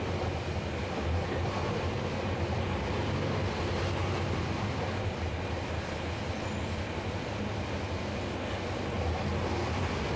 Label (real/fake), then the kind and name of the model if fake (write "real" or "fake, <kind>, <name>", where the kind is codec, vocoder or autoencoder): real